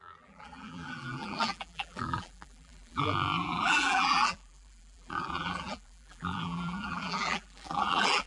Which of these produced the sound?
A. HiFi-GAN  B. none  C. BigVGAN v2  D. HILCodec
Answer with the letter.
C